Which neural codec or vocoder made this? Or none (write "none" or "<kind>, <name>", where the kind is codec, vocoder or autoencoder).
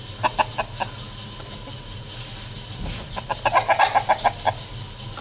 none